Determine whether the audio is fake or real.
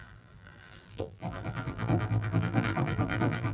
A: fake